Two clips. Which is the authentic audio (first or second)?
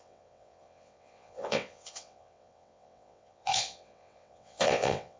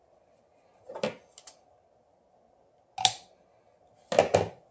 second